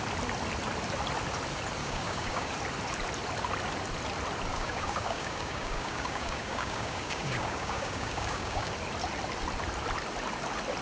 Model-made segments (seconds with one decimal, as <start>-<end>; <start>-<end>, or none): 1.8-2.5; 4.5-8.7